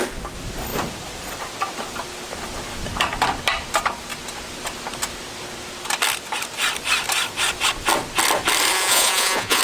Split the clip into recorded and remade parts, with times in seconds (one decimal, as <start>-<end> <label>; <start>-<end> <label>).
0.0-8.7 recorded; 8.7-9.6 remade